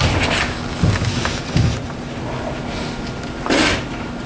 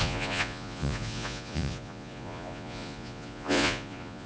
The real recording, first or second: first